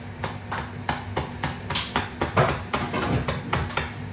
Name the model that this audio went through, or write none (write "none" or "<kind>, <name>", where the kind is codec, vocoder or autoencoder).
none